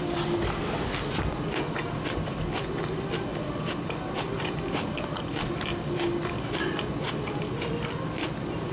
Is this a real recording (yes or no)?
yes